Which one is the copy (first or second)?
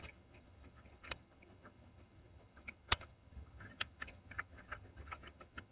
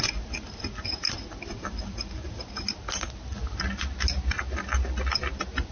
first